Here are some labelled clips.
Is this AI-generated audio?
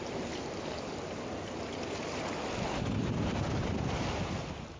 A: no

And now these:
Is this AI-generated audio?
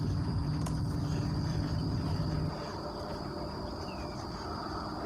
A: yes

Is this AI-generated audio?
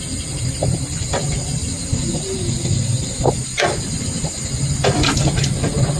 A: no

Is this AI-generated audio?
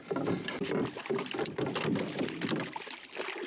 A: yes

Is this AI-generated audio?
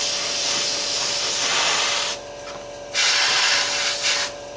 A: no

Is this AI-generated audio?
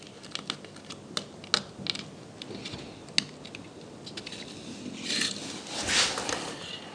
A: no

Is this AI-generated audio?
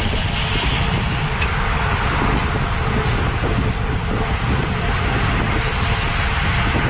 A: no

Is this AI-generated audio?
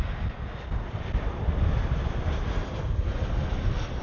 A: no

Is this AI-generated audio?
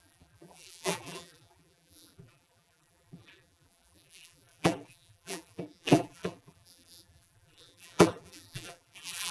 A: yes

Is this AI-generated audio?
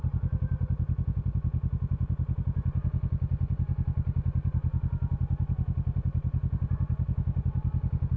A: no